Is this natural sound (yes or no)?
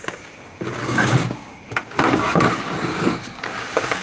no